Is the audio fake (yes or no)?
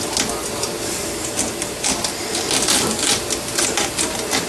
no